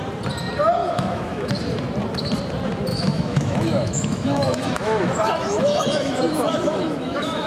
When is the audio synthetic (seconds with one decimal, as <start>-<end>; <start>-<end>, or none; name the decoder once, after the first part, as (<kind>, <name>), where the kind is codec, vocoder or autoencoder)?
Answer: 0.8-1.5 (autoencoder, DAC-VAE); 2.9-7.5